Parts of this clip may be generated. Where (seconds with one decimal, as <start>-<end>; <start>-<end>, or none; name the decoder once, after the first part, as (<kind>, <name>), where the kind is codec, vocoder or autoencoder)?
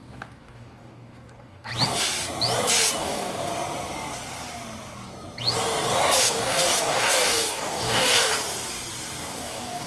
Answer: 0.0-1.7 (codec, DAC); 3.0-3.5; 6.2-8.3; 9.3-9.9